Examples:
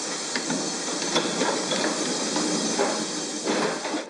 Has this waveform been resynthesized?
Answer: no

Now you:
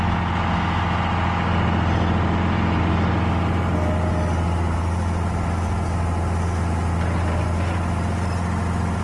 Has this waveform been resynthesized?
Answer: no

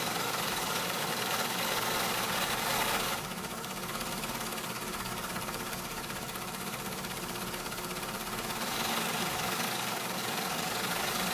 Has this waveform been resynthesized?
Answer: yes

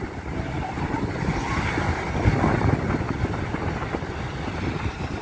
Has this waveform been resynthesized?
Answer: no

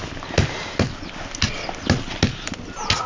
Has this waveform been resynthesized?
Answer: no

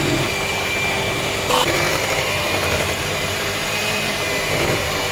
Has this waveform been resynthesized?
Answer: yes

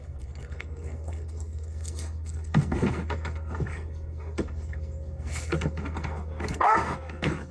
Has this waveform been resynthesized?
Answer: yes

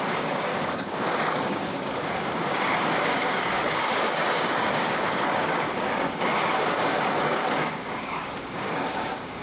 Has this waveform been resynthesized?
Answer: yes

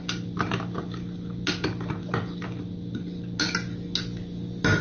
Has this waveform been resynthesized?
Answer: no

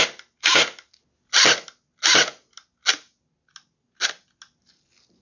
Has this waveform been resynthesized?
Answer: no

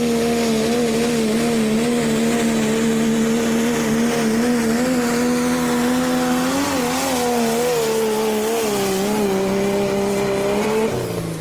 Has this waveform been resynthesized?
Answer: no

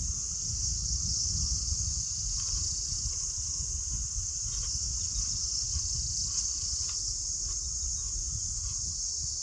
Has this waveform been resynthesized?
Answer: no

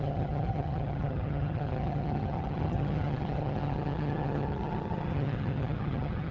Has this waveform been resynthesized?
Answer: yes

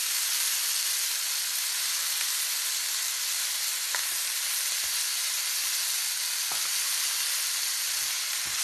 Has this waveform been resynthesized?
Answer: no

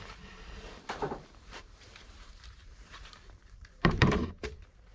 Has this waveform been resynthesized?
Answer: yes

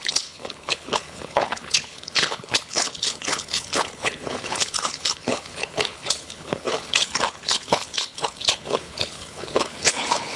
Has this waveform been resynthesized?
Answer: yes